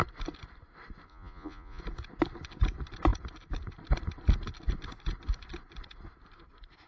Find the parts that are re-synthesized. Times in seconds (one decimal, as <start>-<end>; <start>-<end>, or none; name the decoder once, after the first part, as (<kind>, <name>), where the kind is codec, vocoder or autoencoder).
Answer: 1.1-1.8 (vocoder, Vocos)